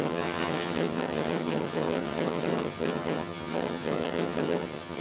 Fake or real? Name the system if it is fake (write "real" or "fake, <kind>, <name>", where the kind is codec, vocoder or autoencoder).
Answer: fake, vocoder, HiFi-GAN